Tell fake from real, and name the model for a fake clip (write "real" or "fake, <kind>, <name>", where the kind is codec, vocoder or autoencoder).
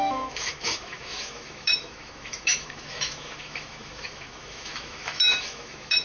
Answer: fake, autoencoder, DAC-VAE